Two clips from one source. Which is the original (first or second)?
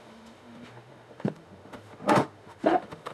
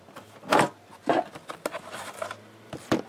second